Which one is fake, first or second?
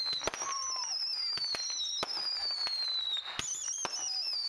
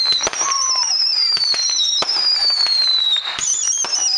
second